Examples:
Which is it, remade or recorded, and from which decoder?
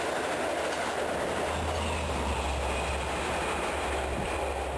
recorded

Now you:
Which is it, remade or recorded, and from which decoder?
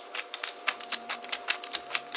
recorded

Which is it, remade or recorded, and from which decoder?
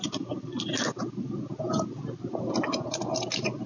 recorded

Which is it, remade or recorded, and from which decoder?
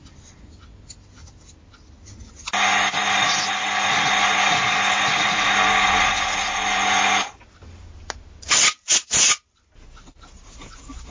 recorded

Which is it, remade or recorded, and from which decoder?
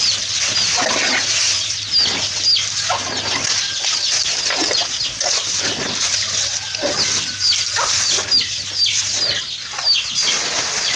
recorded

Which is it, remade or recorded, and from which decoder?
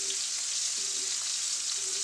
recorded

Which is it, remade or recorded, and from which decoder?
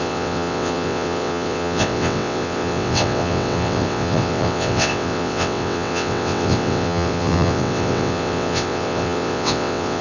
remade, vocoder, WaveNeXt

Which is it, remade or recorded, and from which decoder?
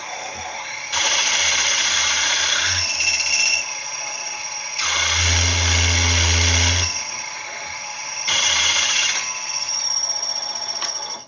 recorded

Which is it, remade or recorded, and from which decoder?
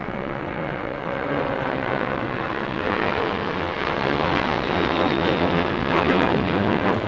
remade, vocoder, WaveNeXt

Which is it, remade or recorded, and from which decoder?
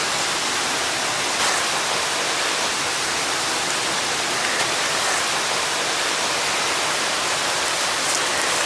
recorded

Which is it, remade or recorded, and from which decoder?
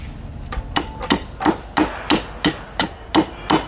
recorded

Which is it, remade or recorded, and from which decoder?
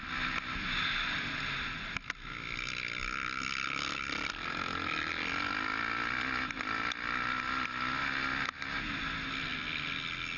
recorded